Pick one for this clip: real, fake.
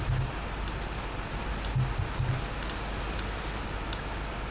real